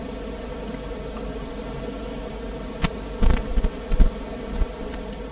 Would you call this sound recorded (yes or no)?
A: yes